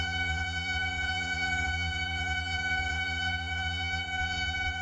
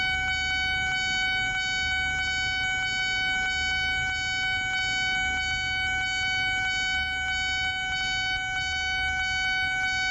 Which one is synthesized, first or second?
first